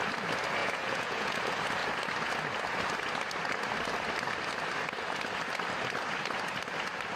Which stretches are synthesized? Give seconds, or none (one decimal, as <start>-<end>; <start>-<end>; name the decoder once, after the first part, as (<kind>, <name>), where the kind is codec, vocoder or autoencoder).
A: 0.6-1.4 (vocoder, Vocos)